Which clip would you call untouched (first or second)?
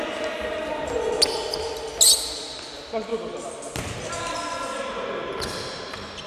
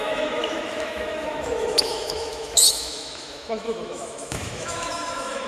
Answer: first